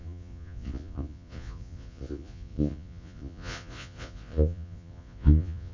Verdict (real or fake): fake